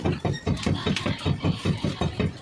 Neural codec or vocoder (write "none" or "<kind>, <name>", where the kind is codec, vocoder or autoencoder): none